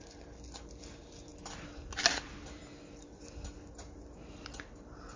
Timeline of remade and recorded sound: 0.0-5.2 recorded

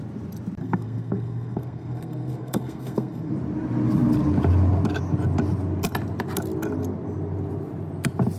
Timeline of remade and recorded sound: 0.0-0.6 recorded; 0.6-3.3 remade; 3.3-8.4 recorded

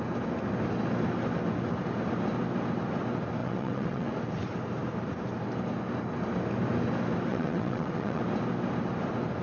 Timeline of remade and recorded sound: 0.0-3.4 recorded; 3.4-4.1 remade; 4.1-7.3 recorded; 7.3-8.2 remade; 8.2-9.4 recorded

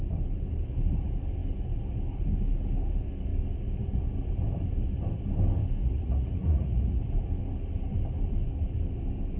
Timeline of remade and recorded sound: 0.0-5.8 recorded; 5.8-7.0 remade; 7.0-9.4 recorded

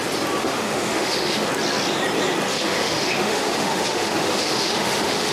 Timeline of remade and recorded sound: 0.0-0.4 recorded; 0.4-1.5 remade; 1.5-2.5 recorded; 2.5-5.3 remade